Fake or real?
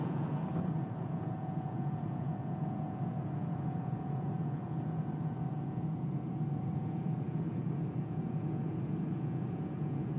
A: fake